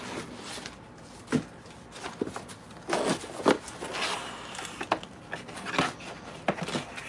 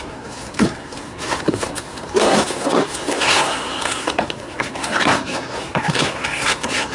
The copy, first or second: second